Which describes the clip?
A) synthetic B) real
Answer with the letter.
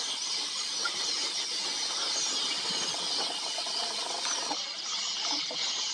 B